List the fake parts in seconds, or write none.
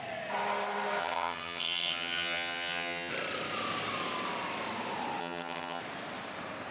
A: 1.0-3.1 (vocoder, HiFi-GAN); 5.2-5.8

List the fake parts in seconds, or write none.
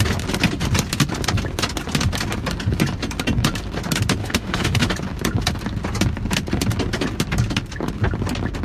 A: 4.2-4.9 (autoencoder, DAC-VAE)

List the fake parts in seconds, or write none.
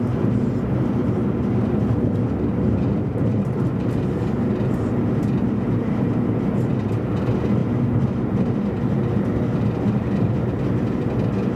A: none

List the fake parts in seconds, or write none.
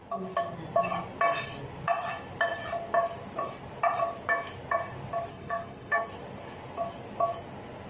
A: 5.3-6.1 (codec, SNAC)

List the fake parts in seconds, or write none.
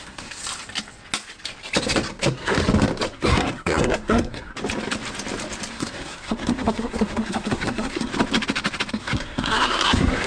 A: 0.0-0.4 (codec, SNAC); 2.1-2.6; 3.1-4.5; 5.7-8.1; 8.9-10.3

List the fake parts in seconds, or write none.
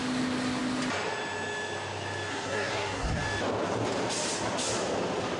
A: 2.3-3.2 (codec, SNAC)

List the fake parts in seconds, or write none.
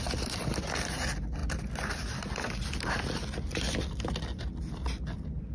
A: none